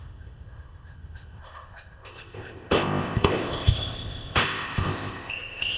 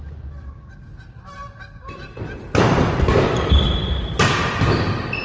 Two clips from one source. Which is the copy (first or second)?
first